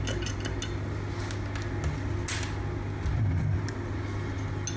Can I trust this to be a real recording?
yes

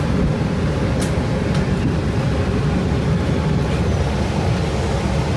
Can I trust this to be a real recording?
yes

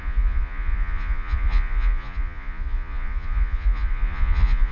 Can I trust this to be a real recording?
no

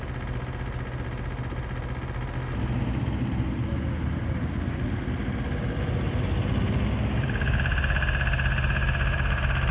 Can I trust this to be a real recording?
yes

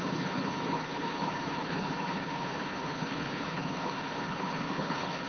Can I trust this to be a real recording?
no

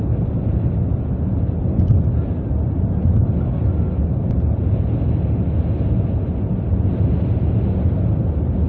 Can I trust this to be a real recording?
yes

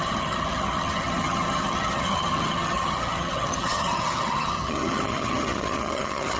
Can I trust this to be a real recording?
no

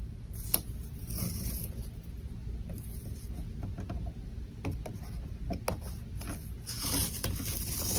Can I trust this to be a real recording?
yes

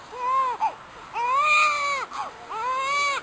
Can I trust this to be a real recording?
yes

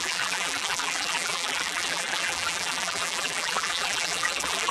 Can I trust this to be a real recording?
no